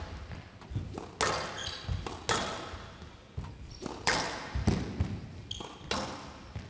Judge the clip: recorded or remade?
recorded